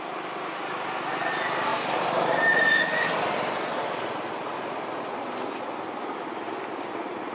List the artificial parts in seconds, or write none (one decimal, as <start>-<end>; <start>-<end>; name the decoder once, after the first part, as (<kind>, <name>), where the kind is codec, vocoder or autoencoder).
none